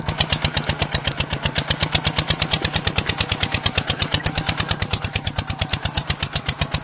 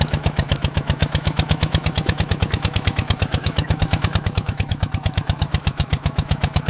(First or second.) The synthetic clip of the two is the second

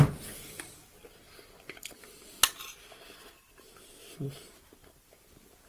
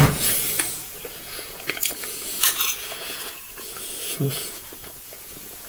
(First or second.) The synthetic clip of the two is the second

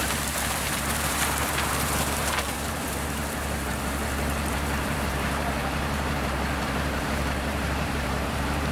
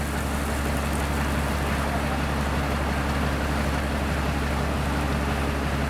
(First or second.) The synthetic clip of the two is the first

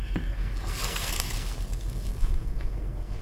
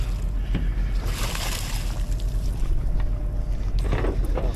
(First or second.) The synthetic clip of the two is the first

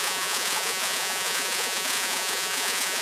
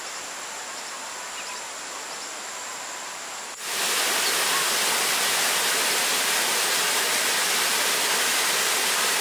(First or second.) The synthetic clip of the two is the first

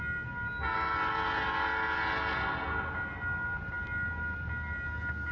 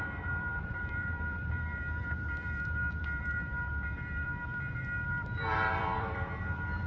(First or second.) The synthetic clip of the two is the second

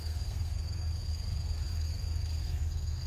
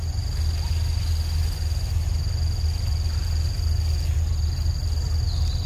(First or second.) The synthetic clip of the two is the first